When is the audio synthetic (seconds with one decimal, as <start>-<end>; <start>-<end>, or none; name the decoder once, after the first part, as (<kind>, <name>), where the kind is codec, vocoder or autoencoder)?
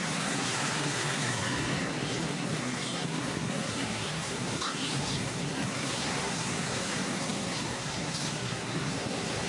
0.0-9.5 (codec, SNAC)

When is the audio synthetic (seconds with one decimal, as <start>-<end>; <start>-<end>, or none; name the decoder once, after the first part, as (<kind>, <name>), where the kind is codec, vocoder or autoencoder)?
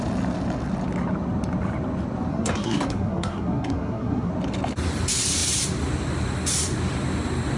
2.3-4.3 (codec, SNAC)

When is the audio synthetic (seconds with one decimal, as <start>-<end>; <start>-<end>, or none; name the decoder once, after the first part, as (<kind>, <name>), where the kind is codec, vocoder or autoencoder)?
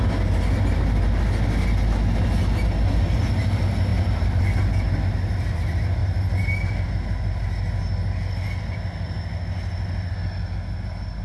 none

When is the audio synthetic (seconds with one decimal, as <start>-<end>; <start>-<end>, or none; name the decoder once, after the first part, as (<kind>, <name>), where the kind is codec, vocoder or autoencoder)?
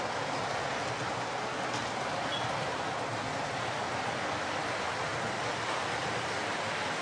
none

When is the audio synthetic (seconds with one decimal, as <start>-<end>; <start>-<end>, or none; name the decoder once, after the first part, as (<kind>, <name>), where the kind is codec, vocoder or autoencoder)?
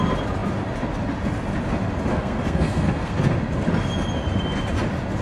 2.1-3.2 (codec, SNAC)